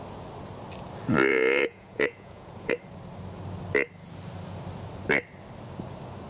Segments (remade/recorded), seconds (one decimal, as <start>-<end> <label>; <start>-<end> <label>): 0.0-1.3 recorded; 1.3-2.7 remade; 2.7-6.3 recorded